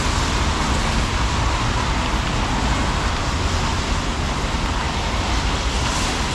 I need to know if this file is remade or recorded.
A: recorded